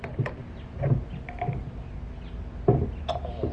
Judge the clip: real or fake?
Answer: real